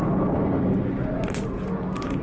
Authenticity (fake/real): real